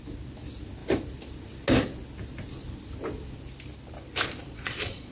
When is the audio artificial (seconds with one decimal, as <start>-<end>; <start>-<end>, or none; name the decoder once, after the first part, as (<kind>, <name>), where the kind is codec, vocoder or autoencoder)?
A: 4.4-5.1 (vocoder, Vocos)